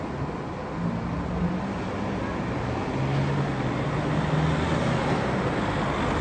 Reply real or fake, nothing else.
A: real